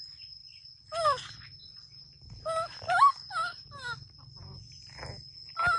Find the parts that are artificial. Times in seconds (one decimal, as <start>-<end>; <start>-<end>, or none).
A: none